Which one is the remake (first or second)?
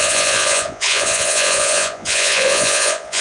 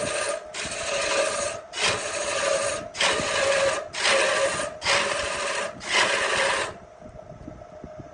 first